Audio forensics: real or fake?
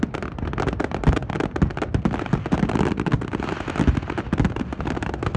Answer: real